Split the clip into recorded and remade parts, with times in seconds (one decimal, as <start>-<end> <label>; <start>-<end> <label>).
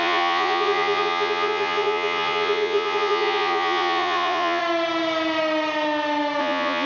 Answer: 0.0-4.6 remade; 4.6-6.4 recorded; 6.4-6.9 remade